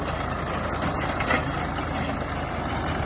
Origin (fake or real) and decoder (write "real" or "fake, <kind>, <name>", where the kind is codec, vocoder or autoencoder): real